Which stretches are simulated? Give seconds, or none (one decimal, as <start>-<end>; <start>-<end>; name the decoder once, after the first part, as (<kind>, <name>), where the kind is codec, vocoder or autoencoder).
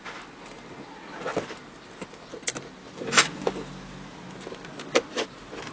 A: none